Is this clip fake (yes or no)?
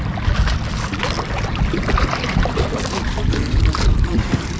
no